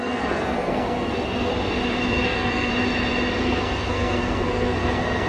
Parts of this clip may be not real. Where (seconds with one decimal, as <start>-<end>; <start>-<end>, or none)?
0.0-1.5; 2.1-2.7; 3.4-5.3